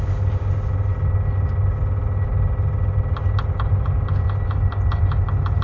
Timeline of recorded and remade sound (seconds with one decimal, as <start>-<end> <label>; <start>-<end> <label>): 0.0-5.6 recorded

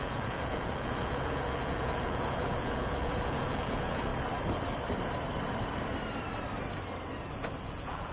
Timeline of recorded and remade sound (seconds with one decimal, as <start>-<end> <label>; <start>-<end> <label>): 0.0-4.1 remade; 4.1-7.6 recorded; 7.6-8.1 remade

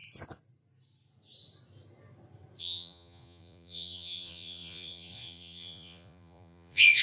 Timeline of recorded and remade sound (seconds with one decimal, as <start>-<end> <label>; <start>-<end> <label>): 0.0-2.6 recorded; 2.6-7.0 remade

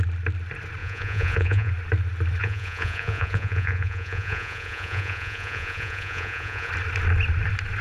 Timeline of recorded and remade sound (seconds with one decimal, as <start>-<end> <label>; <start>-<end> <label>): 0.0-0.8 recorded; 0.8-1.7 remade; 1.7-2.4 recorded; 2.4-6.7 remade; 6.7-7.8 recorded